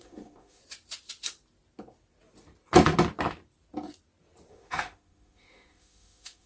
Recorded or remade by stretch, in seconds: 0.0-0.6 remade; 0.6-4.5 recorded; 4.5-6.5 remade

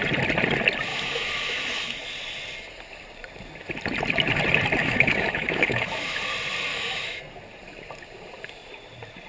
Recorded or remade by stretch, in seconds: 0.0-0.9 recorded; 0.9-2.0 remade; 2.0-4.8 recorded; 4.8-6.2 remade; 6.2-6.7 recorded; 6.7-7.2 remade; 7.2-9.3 recorded

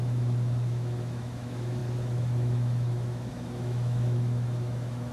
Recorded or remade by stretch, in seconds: 0.0-5.1 remade

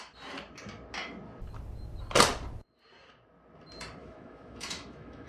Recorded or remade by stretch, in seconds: 0.0-4.0 recorded; 4.0-5.3 remade

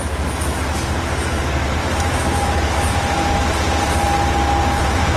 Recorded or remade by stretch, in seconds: 0.0-1.8 recorded; 1.8-2.9 remade; 2.9-5.2 recorded

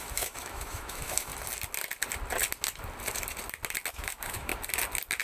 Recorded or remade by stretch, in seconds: 0.0-1.3 remade; 1.3-3.9 recorded; 3.9-4.5 remade; 4.5-5.2 recorded

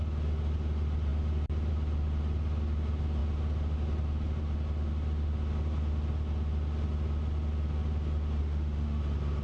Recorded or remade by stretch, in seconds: 0.0-8.4 recorded; 8.4-9.0 remade; 9.0-9.4 recorded